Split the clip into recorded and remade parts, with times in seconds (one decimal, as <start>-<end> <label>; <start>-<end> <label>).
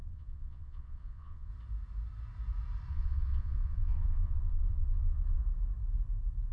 0.0-1.5 remade; 1.5-2.9 recorded; 2.9-5.4 remade; 5.4-6.5 recorded